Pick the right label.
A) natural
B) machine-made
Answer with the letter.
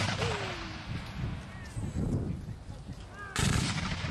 A